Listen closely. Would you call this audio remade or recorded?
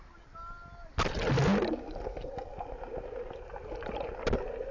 recorded